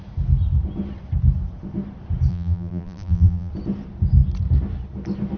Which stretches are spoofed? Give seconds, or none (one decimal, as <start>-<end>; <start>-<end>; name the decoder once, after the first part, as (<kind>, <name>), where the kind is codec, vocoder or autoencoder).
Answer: 2.3-3.5 (vocoder, BigVGAN v2)